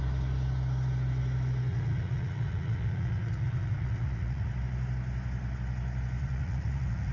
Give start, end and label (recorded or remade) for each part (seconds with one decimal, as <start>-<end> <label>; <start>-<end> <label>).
0.0-1.7 recorded; 1.7-4.5 remade; 4.5-6.2 recorded; 6.2-7.1 remade